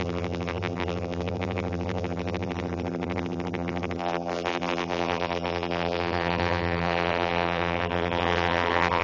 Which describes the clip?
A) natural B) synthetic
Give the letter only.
B